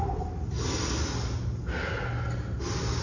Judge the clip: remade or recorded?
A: recorded